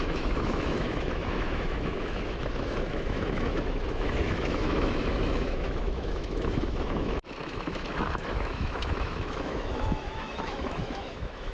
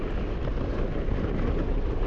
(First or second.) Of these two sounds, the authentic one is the second